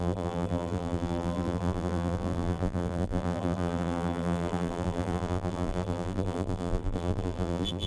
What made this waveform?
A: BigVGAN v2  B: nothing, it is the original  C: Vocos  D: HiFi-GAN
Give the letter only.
A